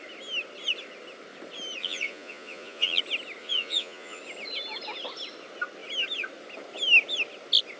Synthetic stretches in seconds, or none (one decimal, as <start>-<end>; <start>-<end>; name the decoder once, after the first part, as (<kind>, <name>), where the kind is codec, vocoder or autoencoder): 1.8-3.0 (vocoder, Vocos); 3.4-4.2